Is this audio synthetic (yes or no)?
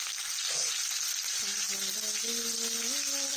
no